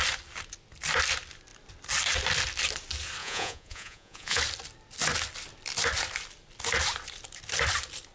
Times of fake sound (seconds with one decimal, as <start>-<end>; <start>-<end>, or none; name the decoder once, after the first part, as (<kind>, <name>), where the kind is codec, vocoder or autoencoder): 3.2-4.4 (vocoder, Vocos)